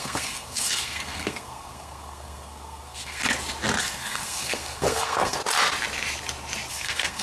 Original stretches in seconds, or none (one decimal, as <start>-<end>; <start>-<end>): 3.2-3.8; 5.4-6.7